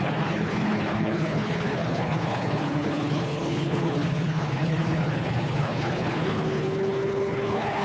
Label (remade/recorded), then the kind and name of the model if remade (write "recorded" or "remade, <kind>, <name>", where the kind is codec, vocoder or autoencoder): remade, codec, HILCodec